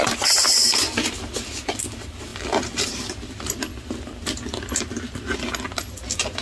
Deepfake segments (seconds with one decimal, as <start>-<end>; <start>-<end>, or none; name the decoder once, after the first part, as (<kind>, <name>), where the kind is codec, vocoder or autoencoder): none